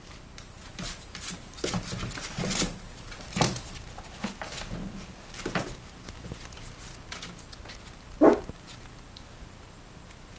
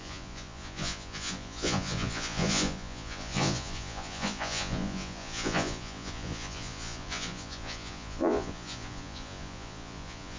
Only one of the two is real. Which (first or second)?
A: first